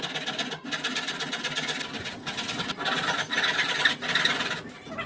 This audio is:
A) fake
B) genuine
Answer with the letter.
B